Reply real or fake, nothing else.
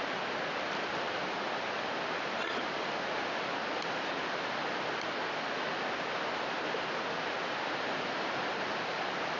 real